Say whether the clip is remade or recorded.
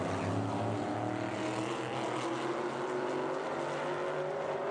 recorded